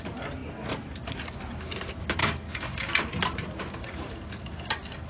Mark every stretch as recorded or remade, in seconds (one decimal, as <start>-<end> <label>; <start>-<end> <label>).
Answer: 0.0-2.2 recorded; 2.2-2.9 remade; 2.9-5.1 recorded